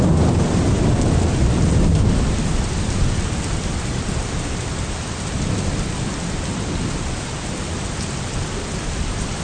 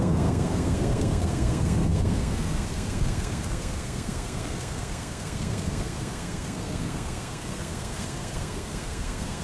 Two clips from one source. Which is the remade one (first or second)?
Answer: second